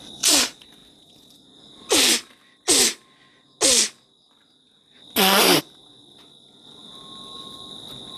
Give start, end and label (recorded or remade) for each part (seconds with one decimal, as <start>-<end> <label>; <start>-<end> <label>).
0.0-8.2 recorded